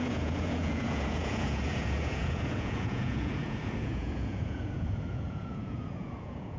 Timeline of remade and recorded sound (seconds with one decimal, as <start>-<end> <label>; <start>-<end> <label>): 0.0-6.6 remade